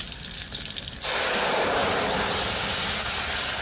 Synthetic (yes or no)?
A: no